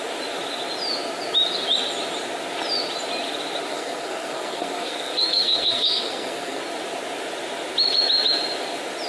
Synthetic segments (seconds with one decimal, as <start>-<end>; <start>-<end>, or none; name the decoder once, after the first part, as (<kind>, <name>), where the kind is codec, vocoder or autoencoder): 3.7-6.6 (codec, SNAC)